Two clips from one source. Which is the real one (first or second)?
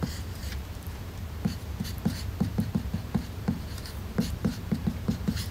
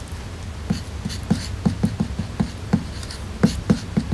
second